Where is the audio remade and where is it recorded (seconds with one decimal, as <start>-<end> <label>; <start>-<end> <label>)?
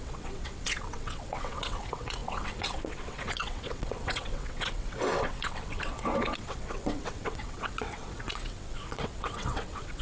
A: 0.0-10.0 remade